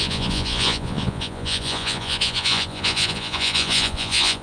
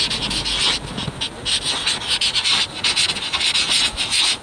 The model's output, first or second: first